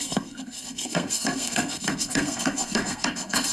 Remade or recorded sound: remade